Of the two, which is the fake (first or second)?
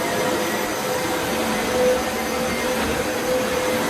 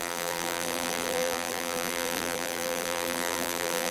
second